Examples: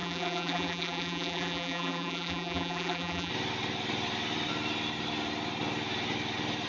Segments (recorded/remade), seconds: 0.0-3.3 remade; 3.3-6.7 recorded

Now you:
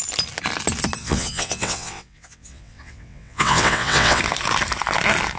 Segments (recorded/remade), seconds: 0.0-1.0 recorded; 1.0-4.2 remade; 4.2-5.4 recorded

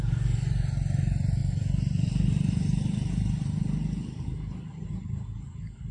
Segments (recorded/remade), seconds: 0.0-5.9 recorded

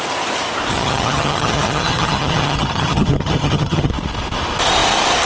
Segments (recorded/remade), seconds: 0.0-0.7 recorded; 0.7-3.9 remade; 3.9-5.3 recorded

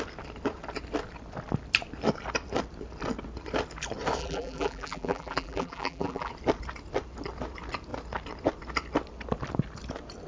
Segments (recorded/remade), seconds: 0.0-4.2 recorded; 4.2-6.3 remade; 6.3-10.3 recorded

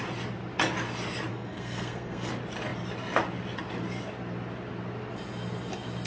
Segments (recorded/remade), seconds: 0.0-1.3 recorded; 1.3-2.3 remade; 2.3-6.1 recorded

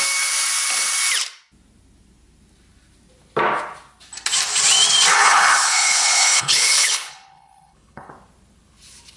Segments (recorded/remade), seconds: 0.0-5.1 recorded; 5.1-8.1 remade; 8.1-9.2 recorded

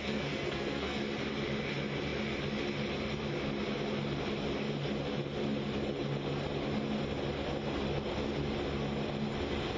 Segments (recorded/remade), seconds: 0.0-1.0 remade; 1.0-9.8 recorded